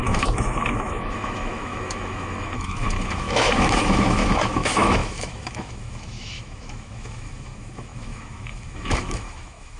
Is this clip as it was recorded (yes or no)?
no